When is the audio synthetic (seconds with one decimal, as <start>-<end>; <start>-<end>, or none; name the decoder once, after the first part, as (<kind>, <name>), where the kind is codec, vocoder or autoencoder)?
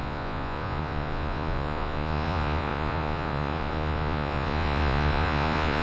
0.0-5.8 (vocoder, Vocos)